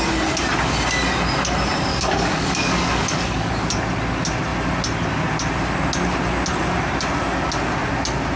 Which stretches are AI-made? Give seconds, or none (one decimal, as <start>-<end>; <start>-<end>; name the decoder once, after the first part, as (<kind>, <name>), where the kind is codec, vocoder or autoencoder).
1.9-3.5 (codec, DAC)